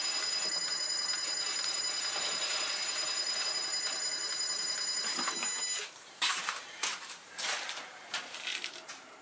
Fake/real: fake